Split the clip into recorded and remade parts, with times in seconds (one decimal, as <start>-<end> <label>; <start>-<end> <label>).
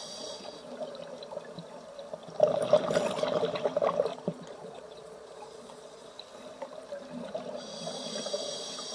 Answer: 0.0-0.7 remade; 0.7-4.1 recorded; 4.1-6.1 remade; 6.1-8.9 recorded